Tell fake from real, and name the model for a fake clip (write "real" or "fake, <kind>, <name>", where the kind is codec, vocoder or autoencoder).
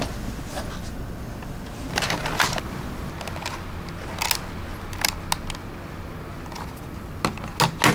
real